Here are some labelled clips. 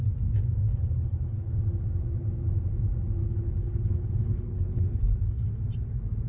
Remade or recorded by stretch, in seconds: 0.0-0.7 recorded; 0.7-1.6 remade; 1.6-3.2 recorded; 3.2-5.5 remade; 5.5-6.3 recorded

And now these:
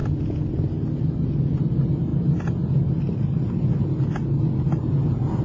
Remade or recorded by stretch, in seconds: 0.0-5.4 recorded

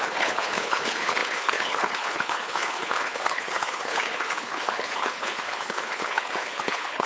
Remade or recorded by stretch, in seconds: 0.0-7.1 remade

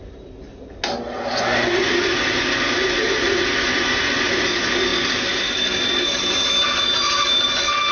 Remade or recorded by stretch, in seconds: 0.0-7.9 recorded